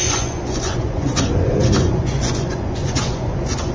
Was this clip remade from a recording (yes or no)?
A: yes